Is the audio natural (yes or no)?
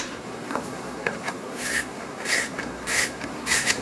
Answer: no